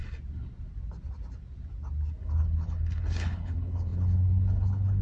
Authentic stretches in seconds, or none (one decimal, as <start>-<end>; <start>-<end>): 0.0-2.2